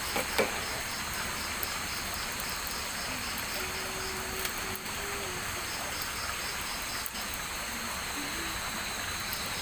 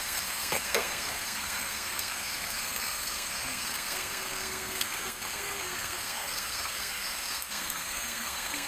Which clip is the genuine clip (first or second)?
first